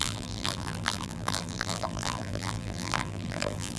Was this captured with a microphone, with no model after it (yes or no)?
no